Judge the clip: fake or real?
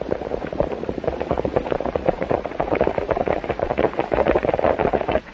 fake